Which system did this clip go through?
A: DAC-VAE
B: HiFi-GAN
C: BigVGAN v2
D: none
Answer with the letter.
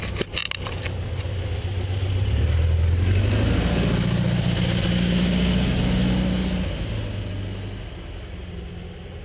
D